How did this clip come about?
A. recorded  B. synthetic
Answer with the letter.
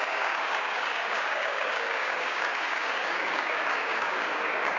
B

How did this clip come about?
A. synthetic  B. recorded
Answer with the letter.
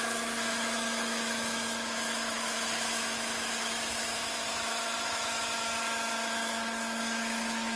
A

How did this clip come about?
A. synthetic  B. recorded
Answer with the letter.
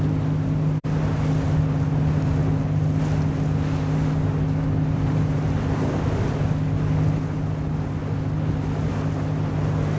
B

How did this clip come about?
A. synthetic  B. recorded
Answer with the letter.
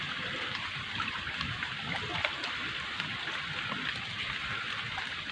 A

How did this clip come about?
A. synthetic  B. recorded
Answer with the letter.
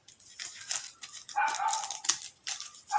B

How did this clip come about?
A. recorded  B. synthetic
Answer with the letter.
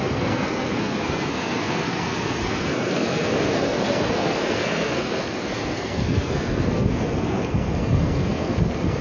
B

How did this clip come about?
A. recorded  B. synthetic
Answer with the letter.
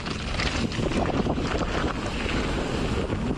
A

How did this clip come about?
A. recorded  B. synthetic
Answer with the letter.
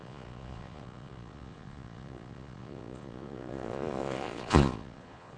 B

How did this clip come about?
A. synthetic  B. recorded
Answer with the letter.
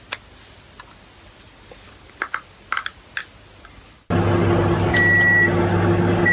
B